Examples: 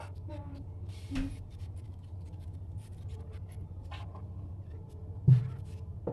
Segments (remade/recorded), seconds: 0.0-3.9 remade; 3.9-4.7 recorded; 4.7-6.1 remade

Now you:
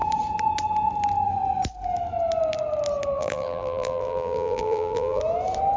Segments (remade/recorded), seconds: 0.0-3.2 recorded; 3.2-5.2 remade; 5.2-5.8 recorded

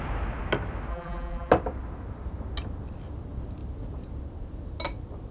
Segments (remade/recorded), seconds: 0.0-0.9 recorded; 0.9-1.5 remade; 1.5-5.3 recorded

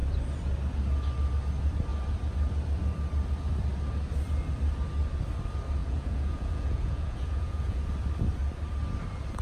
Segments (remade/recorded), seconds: 0.0-5.8 recorded; 5.8-7.9 remade; 7.9-9.4 recorded

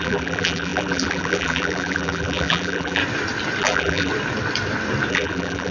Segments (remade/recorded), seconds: 0.0-3.0 remade; 3.0-3.6 recorded; 3.6-4.1 remade; 4.1-5.1 recorded; 5.1-5.7 remade

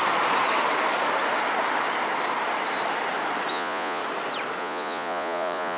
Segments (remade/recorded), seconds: 0.0-3.5 recorded; 3.5-4.0 remade; 4.0-4.6 recorded; 4.6-5.8 remade